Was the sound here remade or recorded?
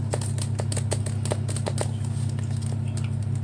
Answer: recorded